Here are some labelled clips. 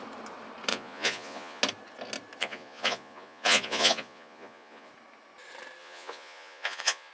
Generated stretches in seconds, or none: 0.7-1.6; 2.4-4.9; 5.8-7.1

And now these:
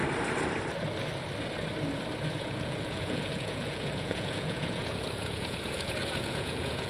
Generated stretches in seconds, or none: 2.3-6.9

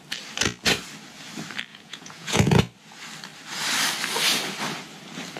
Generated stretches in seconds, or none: 1.7-2.6

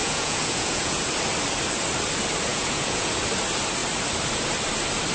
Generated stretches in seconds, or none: 0.0-1.0; 2.5-3.1

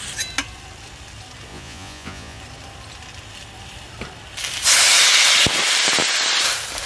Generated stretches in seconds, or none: 1.5-2.4